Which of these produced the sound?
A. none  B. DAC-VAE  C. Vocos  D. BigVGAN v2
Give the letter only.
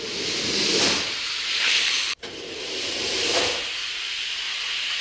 D